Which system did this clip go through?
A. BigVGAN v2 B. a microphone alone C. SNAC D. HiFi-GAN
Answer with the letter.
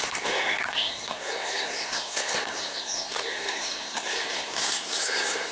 C